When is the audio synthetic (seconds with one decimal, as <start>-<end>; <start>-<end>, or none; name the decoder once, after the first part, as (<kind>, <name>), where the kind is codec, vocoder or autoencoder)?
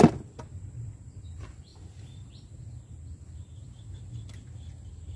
none